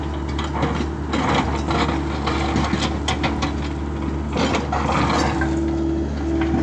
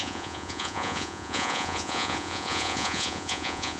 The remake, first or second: second